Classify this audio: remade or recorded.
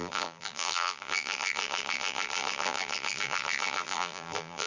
remade